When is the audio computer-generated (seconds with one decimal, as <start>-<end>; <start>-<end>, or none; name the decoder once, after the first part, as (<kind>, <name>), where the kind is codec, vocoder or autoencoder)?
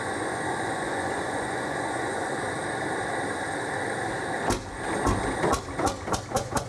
0.0-2.3 (vocoder, Vocos); 6.3-6.7